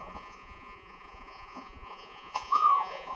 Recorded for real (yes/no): no